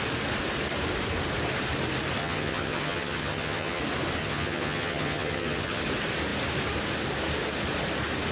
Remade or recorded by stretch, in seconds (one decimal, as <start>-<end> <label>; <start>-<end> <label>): 0.0-2.2 recorded; 2.2-3.8 remade; 3.8-4.2 recorded; 4.2-5.8 remade; 5.8-8.3 recorded